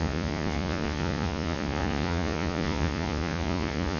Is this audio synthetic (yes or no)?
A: yes